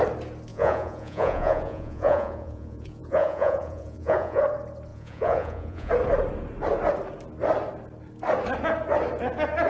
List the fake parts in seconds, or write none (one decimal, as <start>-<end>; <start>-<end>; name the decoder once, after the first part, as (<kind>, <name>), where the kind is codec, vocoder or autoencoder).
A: 0.5-4.4 (vocoder, Vocos); 4.9-5.9